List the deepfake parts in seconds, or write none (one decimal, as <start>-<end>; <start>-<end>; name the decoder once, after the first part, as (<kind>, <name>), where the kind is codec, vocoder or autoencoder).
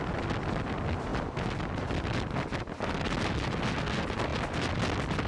none